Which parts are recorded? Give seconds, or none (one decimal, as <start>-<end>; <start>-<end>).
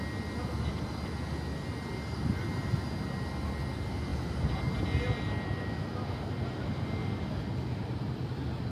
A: 0.0-8.7